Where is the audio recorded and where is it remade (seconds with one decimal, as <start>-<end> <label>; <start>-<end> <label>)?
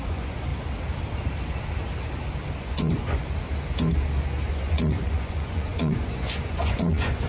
0.0-0.5 remade; 0.5-2.6 recorded; 2.6-3.2 remade; 3.2-4.5 recorded; 4.5-7.3 remade